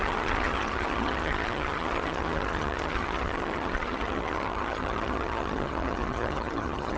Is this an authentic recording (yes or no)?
no